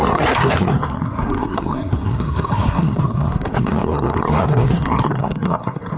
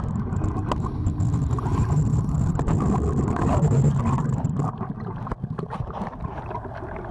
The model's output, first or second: first